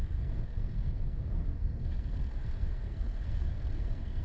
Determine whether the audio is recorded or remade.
remade